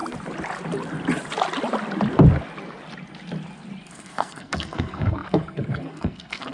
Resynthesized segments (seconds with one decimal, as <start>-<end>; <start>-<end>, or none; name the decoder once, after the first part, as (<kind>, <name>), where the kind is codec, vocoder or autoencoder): 3.9-6.5 (codec, SNAC)